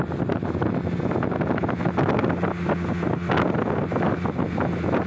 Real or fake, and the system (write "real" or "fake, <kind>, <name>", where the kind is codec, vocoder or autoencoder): real